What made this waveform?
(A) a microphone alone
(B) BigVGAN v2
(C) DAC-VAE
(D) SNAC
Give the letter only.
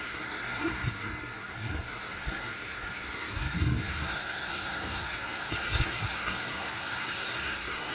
D